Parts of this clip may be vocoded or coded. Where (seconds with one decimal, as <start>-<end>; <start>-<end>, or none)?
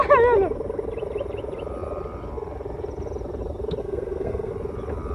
3.8-4.5